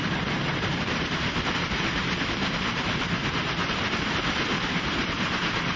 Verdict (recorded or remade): remade